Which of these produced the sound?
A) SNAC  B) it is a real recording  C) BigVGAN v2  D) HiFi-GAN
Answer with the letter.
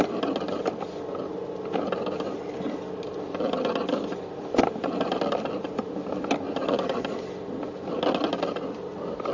B